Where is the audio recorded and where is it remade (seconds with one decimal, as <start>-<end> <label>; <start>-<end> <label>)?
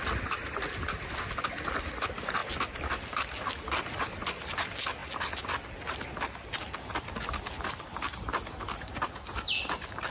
0.0-10.1 recorded